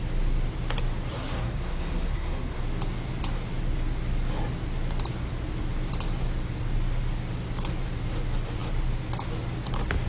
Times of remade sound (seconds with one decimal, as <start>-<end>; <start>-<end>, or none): 1.2-2.6